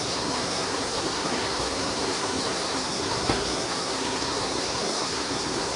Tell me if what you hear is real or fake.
fake